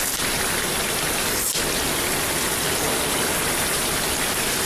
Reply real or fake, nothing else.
real